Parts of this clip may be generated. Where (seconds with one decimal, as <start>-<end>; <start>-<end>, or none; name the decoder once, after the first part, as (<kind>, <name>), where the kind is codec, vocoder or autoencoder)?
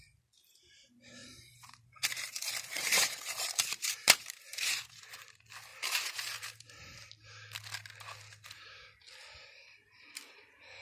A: 1.2-5.0 (vocoder, BigVGAN v2); 5.7-7.0